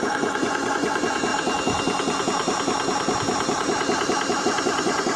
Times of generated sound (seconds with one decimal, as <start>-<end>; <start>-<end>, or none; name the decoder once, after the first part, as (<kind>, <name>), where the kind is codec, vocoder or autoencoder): 0.0-1.3 (vocoder, Vocos); 4.4-5.2